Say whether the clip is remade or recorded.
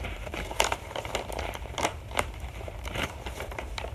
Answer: remade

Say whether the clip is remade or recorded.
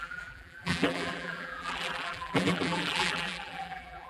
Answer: remade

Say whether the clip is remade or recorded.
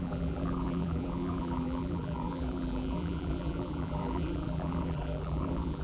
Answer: remade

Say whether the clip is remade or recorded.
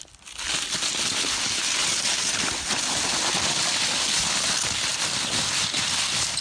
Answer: remade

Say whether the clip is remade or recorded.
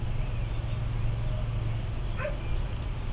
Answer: recorded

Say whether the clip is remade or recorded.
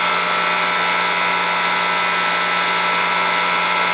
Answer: recorded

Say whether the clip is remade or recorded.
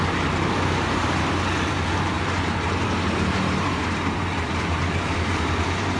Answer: remade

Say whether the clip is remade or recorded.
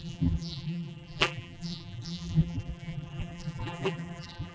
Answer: remade